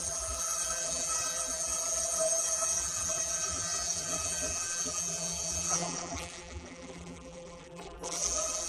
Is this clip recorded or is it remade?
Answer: remade